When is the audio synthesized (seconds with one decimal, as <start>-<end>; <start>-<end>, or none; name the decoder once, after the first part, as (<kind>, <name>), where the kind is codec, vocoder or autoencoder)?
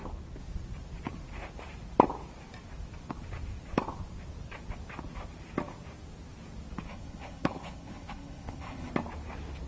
6.9-8.9 (codec, HILCodec)